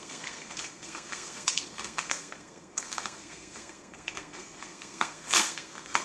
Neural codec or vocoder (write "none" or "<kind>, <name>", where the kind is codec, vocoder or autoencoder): codec, SNAC